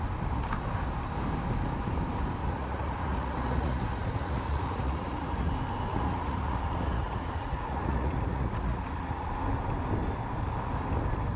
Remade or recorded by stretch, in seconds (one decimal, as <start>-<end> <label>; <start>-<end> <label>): 0.0-2.4 recorded; 2.4-5.5 remade; 5.5-5.9 recorded; 5.9-9.3 remade; 9.3-11.4 recorded